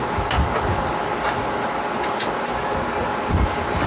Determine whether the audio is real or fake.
real